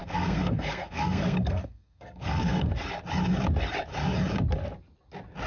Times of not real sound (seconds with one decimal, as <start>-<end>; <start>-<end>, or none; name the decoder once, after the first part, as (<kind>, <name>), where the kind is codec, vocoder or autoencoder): 0.0-2.7 (codec, SNAC)